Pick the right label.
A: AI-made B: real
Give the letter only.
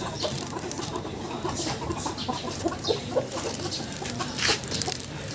A